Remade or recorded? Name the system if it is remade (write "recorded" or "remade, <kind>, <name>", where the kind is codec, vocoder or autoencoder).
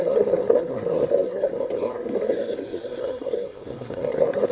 remade, codec, SNAC